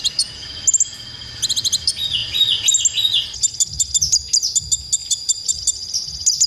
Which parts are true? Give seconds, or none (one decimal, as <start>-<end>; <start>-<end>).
0.0-5.0; 5.6-6.5